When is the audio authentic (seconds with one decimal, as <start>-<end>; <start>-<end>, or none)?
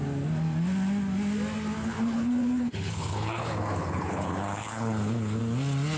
0.0-1.8; 5.4-6.0